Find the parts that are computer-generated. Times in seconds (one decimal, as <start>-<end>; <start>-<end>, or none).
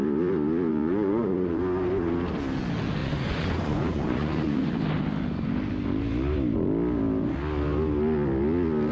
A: 0.7-1.6; 3.0-4.7